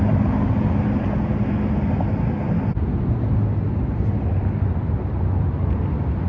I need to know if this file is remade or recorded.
recorded